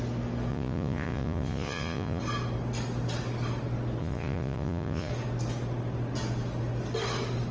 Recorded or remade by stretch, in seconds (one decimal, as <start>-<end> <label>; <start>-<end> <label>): 0.0-0.5 recorded; 0.5-2.2 remade; 2.2-4.0 recorded; 4.0-5.1 remade; 5.1-7.5 recorded